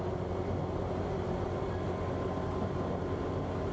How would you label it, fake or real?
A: real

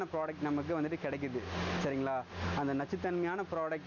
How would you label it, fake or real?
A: real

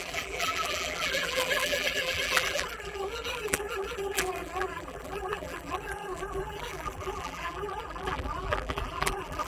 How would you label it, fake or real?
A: fake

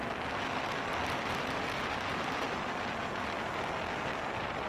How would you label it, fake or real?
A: real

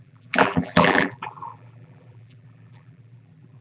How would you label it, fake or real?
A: fake